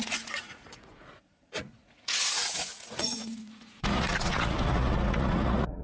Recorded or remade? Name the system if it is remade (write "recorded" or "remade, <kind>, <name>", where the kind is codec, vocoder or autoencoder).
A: remade, vocoder, Vocos